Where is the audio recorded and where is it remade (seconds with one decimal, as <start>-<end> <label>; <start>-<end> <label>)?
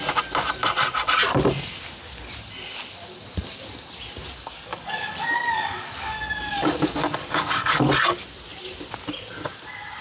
0.0-4.7 recorded; 4.7-7.9 remade; 7.9-10.0 recorded